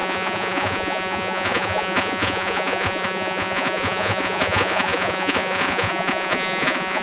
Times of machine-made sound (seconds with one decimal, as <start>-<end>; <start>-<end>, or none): 0.0-7.0